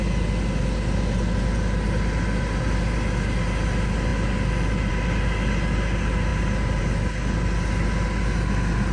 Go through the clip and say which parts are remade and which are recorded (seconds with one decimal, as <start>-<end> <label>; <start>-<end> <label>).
0.0-8.9 recorded